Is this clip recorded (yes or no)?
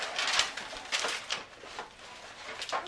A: yes